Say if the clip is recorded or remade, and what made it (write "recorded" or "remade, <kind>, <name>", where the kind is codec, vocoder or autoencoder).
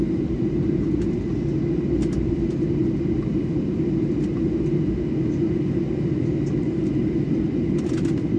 recorded